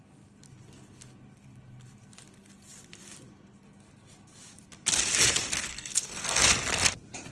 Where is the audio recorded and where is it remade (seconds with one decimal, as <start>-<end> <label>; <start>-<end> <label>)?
0.0-5.7 recorded; 5.7-6.4 remade; 6.4-7.3 recorded